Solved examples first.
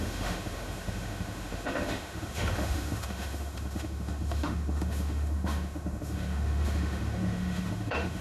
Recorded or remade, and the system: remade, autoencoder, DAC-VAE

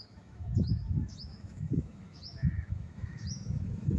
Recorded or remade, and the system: remade, autoencoder, DAC-VAE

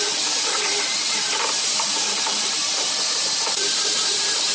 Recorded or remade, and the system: remade, vocoder, BigVGAN v2